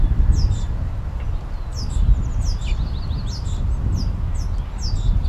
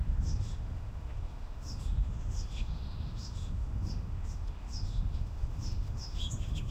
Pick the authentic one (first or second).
first